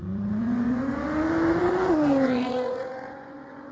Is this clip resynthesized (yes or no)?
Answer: yes